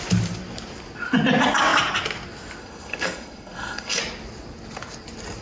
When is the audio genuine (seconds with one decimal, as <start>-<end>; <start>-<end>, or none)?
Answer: 0.0-2.6; 4.0-5.4